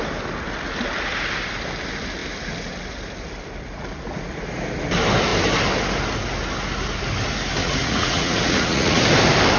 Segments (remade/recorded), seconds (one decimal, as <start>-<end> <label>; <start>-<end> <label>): 0.0-7.6 recorded; 7.6-9.0 remade; 9.0-9.6 recorded